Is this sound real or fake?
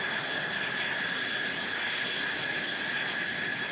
real